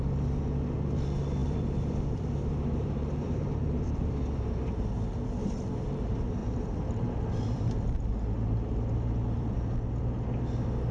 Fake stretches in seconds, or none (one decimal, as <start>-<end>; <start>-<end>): 1.4-4.2; 6.4-9.9